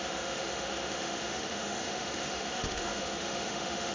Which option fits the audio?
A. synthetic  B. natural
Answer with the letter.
A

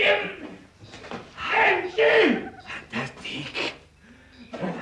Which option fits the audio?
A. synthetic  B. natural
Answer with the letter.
B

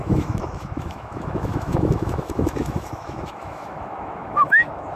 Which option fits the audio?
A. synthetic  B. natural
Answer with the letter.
A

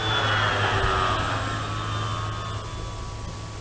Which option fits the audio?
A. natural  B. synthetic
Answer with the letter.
A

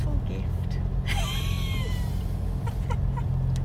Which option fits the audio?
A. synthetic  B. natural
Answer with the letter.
B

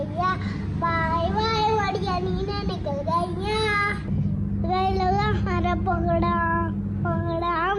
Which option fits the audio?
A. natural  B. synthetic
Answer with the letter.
A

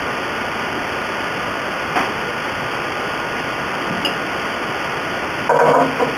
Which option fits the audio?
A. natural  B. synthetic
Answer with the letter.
A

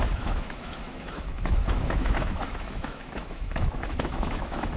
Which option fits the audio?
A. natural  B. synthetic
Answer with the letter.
B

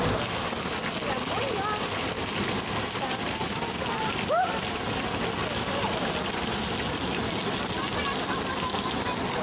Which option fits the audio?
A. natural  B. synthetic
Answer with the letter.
A